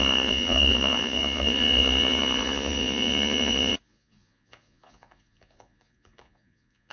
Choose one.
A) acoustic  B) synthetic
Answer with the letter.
B